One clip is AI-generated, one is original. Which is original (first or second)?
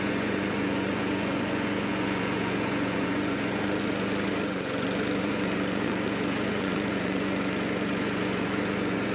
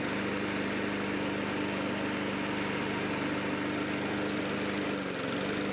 second